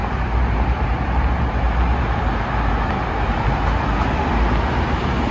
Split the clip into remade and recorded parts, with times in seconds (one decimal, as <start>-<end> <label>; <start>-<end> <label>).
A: 0.0-5.3 recorded